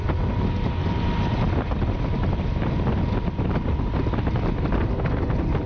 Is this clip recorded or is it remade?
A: recorded